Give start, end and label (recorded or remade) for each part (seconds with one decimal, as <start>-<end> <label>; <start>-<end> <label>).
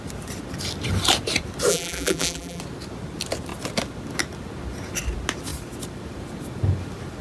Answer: 0.0-1.7 recorded; 1.7-2.6 remade; 2.6-7.2 recorded